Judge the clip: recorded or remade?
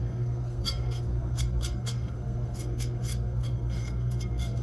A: remade